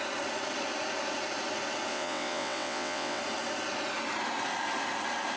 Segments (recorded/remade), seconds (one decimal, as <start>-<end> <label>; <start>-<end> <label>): 0.0-1.9 recorded; 1.9-3.2 remade; 3.2-5.4 recorded